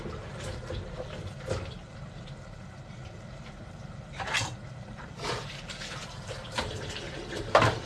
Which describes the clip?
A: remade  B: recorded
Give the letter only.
A